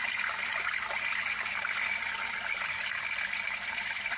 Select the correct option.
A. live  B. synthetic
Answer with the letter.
A